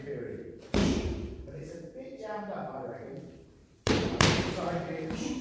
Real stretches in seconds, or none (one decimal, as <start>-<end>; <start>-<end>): 0.0-0.8; 3.1-3.6